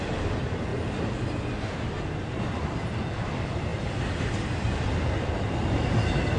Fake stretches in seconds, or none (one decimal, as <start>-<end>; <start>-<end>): none